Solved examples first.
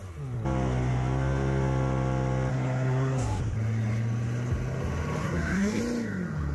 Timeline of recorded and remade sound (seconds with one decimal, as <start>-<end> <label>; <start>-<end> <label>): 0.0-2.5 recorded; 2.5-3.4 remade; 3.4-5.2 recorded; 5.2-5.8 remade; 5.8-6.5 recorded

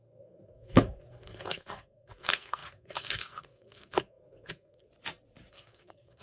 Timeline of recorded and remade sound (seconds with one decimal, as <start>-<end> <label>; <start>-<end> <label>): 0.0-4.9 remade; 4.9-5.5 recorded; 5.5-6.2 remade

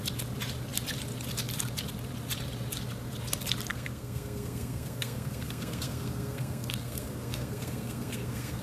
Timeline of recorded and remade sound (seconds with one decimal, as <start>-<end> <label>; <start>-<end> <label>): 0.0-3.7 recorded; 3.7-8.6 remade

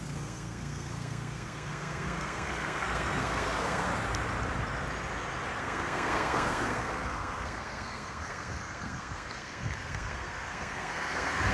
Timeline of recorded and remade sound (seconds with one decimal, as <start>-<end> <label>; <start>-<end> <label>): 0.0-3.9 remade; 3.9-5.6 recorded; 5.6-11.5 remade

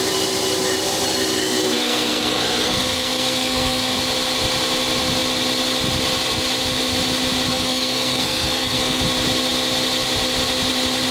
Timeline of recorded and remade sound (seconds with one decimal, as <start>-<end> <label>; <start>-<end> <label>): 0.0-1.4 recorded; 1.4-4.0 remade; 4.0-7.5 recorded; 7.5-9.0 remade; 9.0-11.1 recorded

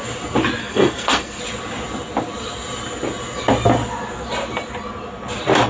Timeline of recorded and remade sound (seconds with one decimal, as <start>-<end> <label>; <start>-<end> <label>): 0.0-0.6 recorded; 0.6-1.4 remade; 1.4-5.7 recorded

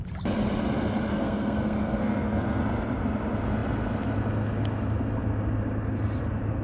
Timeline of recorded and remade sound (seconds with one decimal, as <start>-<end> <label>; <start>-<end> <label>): 0.0-1.1 recorded; 1.1-2.6 remade; 2.6-6.6 recorded

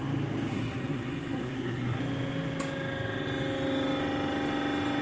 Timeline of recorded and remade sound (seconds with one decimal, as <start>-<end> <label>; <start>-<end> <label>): 0.0-0.5 recorded; 0.5-2.0 remade; 2.0-5.0 recorded